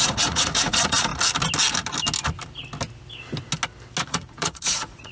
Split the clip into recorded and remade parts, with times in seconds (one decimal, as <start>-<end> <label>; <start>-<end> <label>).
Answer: 0.0-1.1 remade; 1.1-4.0 recorded; 4.0-5.1 remade